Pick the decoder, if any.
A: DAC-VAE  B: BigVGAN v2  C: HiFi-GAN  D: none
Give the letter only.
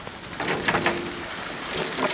D